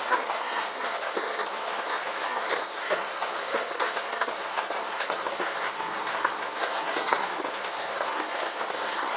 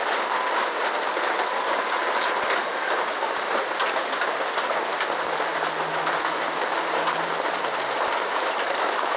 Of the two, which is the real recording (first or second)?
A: second